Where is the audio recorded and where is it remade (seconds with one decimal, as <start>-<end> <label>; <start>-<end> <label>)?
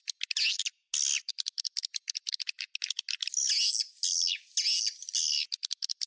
0.0-6.1 recorded